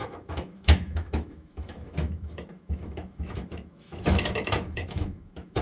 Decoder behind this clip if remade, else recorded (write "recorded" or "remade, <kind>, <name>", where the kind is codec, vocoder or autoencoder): remade, autoencoder, DAC-VAE